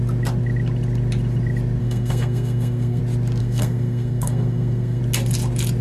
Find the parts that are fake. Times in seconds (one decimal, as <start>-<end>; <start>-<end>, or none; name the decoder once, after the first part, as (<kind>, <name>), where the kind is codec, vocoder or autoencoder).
1.8-3.0 (codec, SNAC); 3.4-5.0